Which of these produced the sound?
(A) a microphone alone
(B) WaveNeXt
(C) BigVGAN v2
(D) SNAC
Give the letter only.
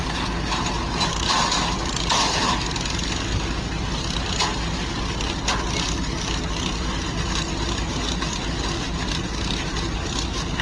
A